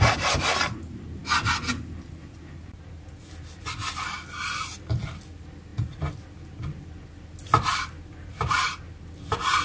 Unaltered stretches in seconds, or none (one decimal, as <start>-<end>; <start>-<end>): 0.0-9.6

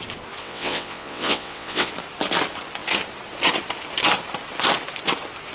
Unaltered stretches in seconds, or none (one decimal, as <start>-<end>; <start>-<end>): 0.0-0.4; 1.9-5.5

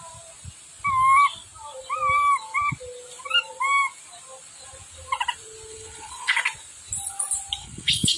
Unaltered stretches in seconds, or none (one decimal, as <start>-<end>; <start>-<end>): 0.0-5.7; 6.3-7.6

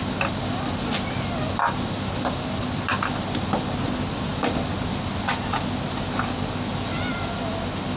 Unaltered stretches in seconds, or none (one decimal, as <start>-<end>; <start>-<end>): 0.0-8.0

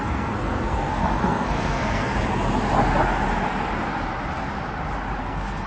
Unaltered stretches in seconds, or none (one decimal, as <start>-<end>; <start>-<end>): 2.1-5.2

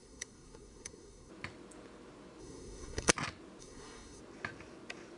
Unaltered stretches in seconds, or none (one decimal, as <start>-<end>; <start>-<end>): 1.3-2.4; 3.1-3.6; 4.2-5.2